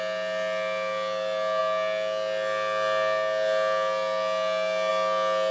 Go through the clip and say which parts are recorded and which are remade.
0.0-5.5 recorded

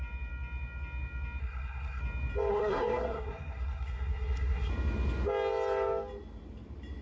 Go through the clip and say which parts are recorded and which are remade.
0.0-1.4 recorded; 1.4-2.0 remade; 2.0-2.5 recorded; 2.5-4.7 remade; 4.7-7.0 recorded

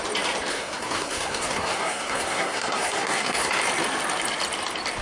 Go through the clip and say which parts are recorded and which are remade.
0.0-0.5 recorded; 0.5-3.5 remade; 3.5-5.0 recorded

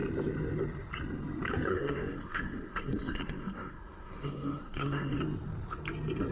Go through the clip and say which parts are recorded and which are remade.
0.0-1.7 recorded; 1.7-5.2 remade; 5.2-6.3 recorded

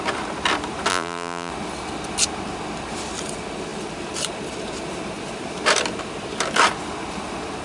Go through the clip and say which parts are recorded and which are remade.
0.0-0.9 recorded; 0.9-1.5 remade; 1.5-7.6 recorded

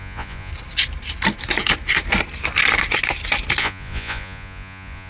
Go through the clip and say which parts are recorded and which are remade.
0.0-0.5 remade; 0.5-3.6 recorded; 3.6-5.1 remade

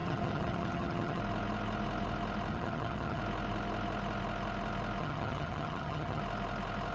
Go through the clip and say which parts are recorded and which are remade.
0.0-1.2 remade; 1.2-2.5 recorded; 2.5-3.2 remade; 3.2-5.0 recorded; 5.0-6.2 remade; 6.2-6.9 recorded